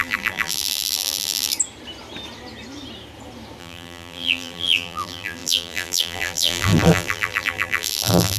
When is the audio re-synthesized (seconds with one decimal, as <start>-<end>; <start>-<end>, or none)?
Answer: 0.0-1.5; 3.6-8.4